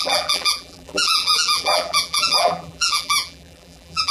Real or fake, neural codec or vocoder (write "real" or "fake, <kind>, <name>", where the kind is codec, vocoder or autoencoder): fake, vocoder, BigVGAN v2